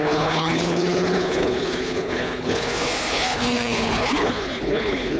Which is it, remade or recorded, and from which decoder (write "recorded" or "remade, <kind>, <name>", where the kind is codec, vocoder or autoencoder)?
remade, codec, HILCodec